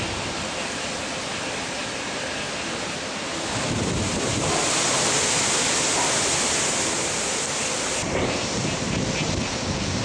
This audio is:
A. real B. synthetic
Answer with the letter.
A